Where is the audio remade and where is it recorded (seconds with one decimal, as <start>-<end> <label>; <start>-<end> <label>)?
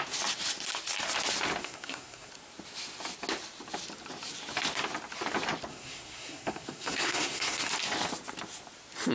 0.0-1.6 recorded; 1.6-2.3 remade; 2.3-5.7 recorded; 5.7-7.7 remade; 7.7-9.1 recorded